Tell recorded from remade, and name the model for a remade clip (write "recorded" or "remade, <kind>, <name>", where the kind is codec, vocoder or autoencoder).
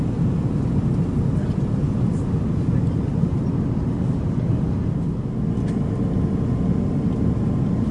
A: recorded